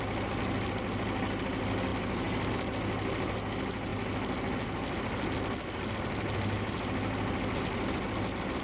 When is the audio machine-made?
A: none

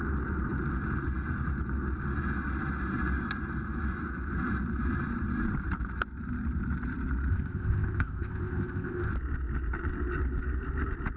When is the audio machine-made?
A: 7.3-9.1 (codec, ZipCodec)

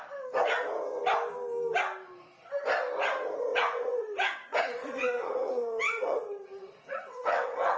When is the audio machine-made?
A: 3.5-7.8 (vocoder, WaveNeXt)

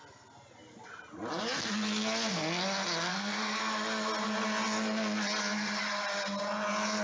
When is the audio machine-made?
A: 3.1-3.6 (codec, SNAC)

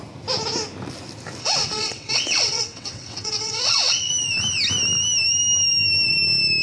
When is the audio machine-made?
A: 1.4-4.1 (vocoder, WaveNeXt)

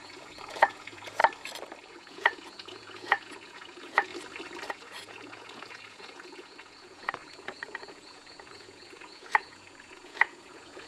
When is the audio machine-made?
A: 0.0-1.2 (vocoder, Vocos); 1.9-4.1; 4.7-10.9

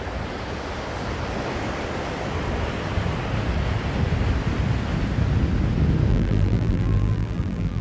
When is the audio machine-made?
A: 6.1-7.8 (vocoder, BigVGAN v2)

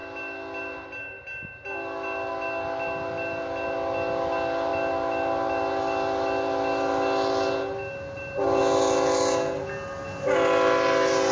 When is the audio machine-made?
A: none